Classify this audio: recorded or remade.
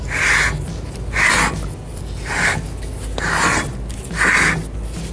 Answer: recorded